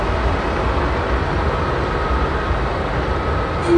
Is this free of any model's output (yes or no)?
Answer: yes